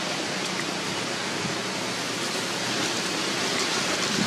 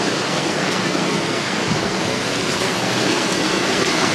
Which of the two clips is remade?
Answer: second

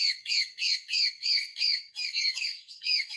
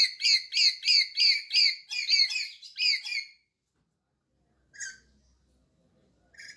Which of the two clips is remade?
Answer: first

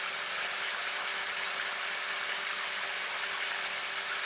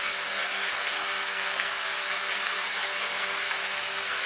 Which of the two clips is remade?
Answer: second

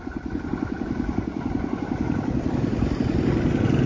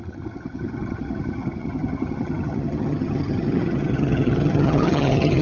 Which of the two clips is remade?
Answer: second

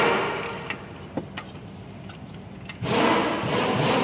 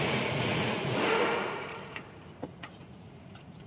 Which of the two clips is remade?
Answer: second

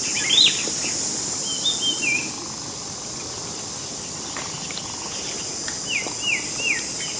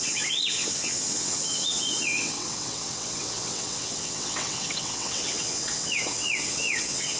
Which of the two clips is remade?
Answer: second